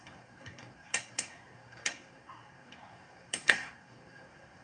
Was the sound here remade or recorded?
remade